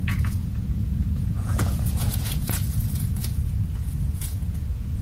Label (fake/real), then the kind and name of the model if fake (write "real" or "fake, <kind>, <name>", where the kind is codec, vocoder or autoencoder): fake, vocoder, Vocos